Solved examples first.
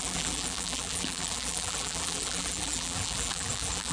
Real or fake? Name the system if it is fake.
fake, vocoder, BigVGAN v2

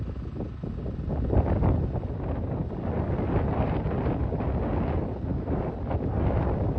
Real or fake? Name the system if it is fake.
real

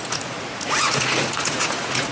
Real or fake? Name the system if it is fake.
fake, vocoder, Vocos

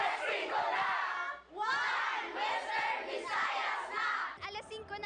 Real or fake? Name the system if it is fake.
real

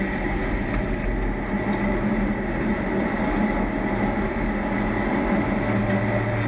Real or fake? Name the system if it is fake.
real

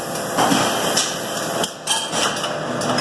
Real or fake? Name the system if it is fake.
real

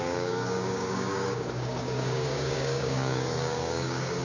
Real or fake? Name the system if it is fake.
fake, codec, DAC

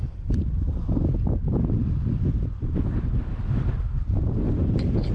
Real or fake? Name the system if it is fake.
real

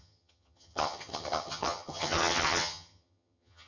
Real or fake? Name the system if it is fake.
fake, vocoder, HiFi-GAN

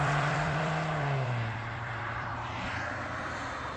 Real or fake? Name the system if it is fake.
fake, vocoder, BigVGAN v2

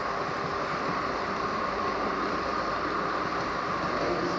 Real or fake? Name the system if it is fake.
real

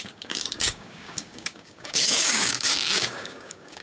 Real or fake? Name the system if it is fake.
fake, codec, DAC